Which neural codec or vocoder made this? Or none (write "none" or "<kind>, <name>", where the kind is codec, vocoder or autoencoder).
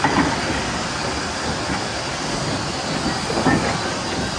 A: none